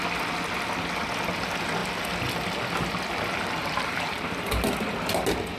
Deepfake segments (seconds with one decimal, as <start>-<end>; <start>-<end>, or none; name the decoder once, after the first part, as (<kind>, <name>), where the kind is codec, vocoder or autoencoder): 3.6-4.5 (vocoder, BigVGAN v2)